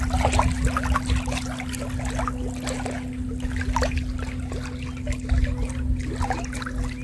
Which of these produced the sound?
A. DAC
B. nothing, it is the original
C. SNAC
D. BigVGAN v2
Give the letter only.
B